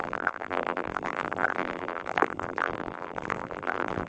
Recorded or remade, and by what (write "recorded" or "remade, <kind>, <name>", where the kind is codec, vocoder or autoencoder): remade, vocoder, BigVGAN v2